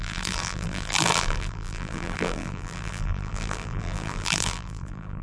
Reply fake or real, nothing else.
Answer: fake